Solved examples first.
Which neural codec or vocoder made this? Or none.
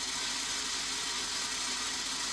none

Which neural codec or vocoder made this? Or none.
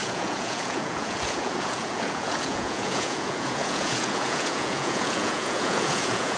vocoder, Vocos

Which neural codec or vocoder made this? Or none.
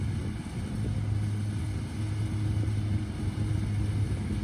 none